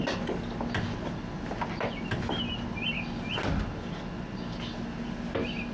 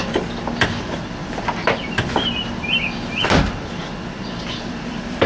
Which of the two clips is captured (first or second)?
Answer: first